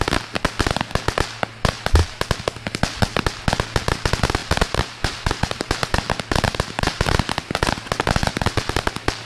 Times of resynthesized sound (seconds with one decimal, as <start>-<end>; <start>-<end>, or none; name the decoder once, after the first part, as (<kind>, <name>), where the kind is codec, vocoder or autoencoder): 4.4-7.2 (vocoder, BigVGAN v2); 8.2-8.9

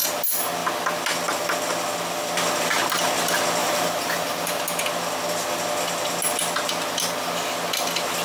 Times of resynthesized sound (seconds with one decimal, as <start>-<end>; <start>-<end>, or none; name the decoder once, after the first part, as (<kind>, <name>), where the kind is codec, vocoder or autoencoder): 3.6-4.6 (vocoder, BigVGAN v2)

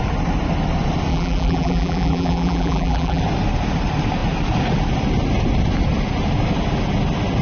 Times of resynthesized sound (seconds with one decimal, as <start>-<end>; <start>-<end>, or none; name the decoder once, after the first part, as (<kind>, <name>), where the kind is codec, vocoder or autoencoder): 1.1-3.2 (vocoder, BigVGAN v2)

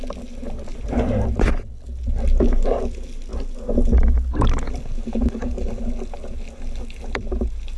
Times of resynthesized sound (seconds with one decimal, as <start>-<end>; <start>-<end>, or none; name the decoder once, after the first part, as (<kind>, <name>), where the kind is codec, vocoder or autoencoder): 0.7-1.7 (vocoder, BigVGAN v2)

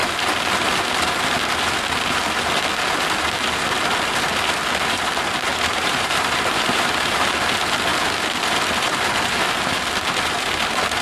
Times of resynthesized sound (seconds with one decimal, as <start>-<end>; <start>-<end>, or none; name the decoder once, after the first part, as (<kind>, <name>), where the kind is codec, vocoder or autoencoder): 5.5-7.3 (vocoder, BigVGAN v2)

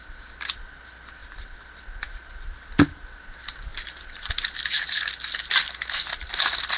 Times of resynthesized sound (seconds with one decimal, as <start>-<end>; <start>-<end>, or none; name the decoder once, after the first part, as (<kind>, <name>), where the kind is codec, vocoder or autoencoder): 1.2-1.7 (vocoder, BigVGAN v2); 3.7-5.0